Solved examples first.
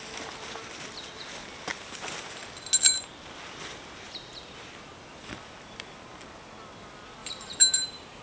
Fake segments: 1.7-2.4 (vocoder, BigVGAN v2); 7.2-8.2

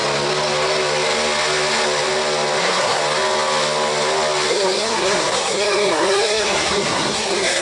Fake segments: 2.6-3.0 (codec, SNAC); 4.5-7.6

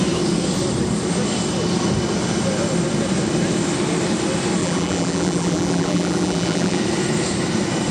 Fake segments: 4.6-6.8 (vocoder, BigVGAN v2)

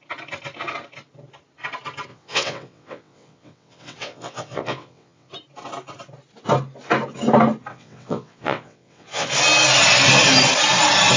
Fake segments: 2.1-5.3 (vocoder, WaveNeXt); 7.7-9.3

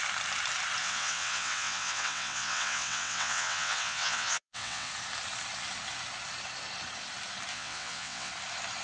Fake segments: 0.8-4.9 (vocoder, WaveNeXt); 7.5-8.3

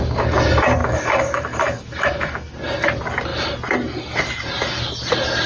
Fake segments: 0.8-2.5 (autoencoder, DAC-VAE)